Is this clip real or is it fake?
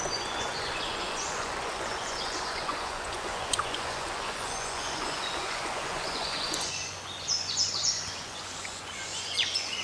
fake